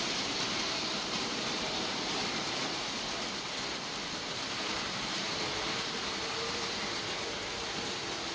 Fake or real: fake